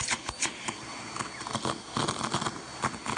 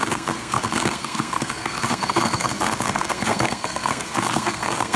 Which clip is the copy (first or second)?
second